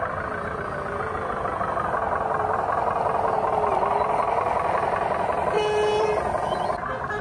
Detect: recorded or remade recorded